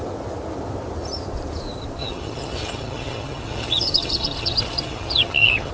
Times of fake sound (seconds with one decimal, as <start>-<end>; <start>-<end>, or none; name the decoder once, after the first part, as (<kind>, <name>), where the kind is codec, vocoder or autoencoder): 2.0-5.7 (vocoder, HiFi-GAN)